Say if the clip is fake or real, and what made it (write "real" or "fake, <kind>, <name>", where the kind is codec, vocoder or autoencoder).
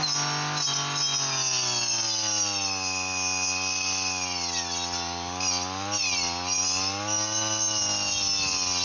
real